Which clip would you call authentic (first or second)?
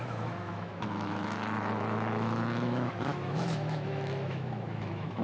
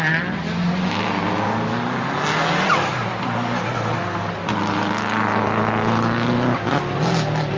second